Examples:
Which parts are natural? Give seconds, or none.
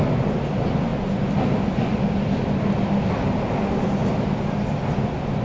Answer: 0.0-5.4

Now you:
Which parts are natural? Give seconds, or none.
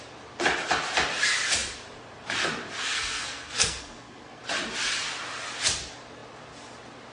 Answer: 0.0-2.8; 4.4-7.1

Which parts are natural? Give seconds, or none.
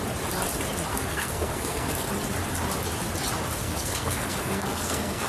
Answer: 0.0-0.9; 2.1-3.6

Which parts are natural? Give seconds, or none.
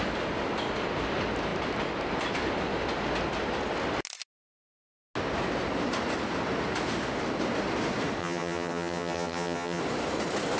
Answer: 0.0-8.2; 9.8-10.6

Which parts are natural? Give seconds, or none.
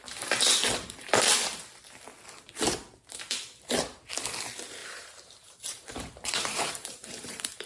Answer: 0.0-4.8